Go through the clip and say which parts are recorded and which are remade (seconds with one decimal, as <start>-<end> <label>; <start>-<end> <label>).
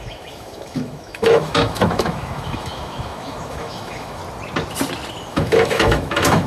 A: 0.0-4.2 remade; 4.2-5.3 recorded; 5.3-6.5 remade